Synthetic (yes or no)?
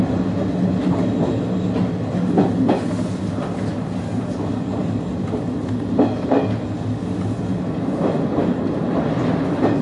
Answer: no